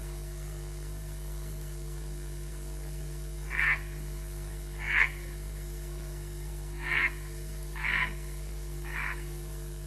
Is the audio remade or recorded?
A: remade